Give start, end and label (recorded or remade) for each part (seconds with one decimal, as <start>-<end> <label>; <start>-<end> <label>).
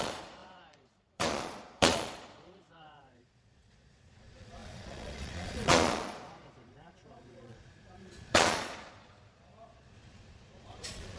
0.0-11.2 remade